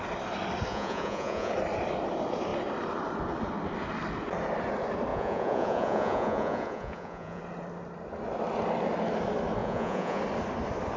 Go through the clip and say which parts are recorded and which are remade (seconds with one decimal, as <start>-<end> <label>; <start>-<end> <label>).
0.0-0.7 recorded; 0.7-1.5 remade; 1.5-5.1 recorded; 5.1-7.4 remade; 7.4-9.6 recorded; 9.6-10.2 remade; 10.2-11.0 recorded